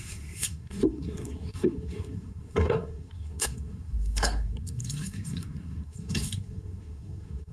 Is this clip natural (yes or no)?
no